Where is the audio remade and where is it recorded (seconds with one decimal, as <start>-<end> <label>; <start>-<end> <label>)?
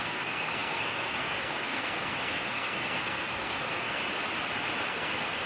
0.0-4.0 remade; 4.0-4.9 recorded; 4.9-5.5 remade